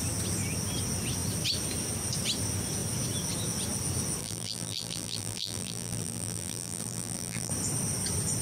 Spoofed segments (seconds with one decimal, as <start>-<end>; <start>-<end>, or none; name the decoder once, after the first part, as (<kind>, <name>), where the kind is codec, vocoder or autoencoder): 4.2-7.5 (vocoder, BigVGAN v2)